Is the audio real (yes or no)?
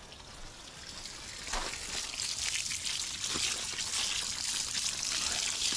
yes